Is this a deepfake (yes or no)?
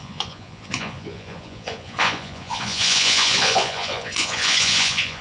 yes